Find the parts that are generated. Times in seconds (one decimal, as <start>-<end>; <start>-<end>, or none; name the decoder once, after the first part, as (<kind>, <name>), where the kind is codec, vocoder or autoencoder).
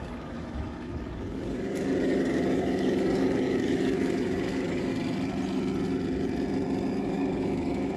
0.0-4.9 (codec, DAC); 6.9-8.0